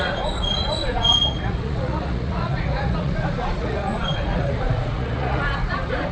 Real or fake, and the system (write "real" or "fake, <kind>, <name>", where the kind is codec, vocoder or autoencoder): fake, vocoder, Vocos